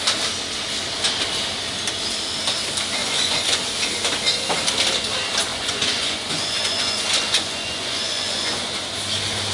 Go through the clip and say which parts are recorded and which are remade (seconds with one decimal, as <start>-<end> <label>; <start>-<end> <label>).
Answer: 0.0-3.0 recorded; 3.0-3.6 remade; 3.6-5.5 recorded; 5.5-8.7 remade; 8.7-9.5 recorded